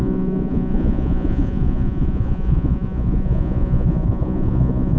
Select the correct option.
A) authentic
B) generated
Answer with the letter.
B